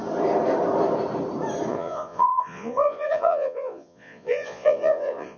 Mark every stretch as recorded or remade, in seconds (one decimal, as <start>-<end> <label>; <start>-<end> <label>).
0.0-1.7 recorded; 1.7-5.4 remade